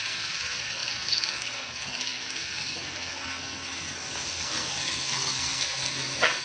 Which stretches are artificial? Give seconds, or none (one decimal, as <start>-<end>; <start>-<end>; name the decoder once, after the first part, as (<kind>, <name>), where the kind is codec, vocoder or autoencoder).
0.0-6.4 (codec, SNAC)